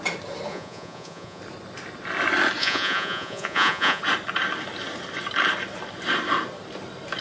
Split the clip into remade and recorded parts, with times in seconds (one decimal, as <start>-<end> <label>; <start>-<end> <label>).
0.0-0.5 recorded; 0.5-1.4 remade; 1.4-2.6 recorded; 2.6-4.0 remade; 4.0-7.2 recorded